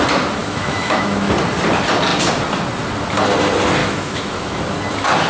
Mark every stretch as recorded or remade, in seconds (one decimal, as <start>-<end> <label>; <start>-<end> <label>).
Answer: 0.0-0.4 recorded; 0.4-1.3 remade; 1.3-3.8 recorded; 3.8-4.6 remade; 4.6-5.3 recorded

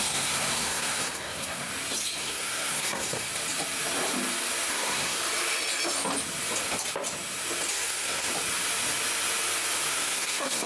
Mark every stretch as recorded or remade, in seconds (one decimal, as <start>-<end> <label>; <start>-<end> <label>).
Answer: 0.0-1.7 remade; 1.7-2.2 recorded; 2.2-3.3 remade; 3.3-4.7 recorded; 4.7-5.2 remade; 5.2-7.7 recorded; 7.7-8.3 remade; 8.3-9.9 recorded; 9.9-10.7 remade

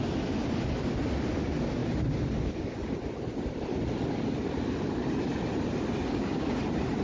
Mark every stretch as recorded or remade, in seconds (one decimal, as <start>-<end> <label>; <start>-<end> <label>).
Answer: 0.0-6.1 recorded; 6.1-6.6 remade; 6.6-7.0 recorded

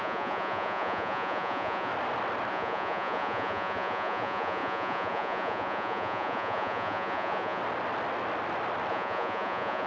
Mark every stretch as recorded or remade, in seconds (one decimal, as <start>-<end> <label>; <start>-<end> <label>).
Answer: 0.0-1.9 remade; 1.9-2.5 recorded; 2.5-7.6 remade; 7.6-8.9 recorded; 8.9-9.9 remade